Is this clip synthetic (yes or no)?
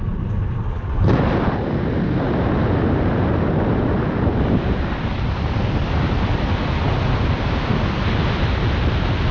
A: no